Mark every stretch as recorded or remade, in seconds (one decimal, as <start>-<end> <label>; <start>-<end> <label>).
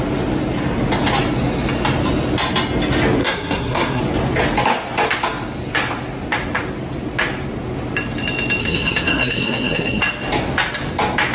0.0-3.2 recorded; 3.2-4.0 remade; 4.0-8.6 recorded; 8.6-10.0 remade; 10.0-11.3 recorded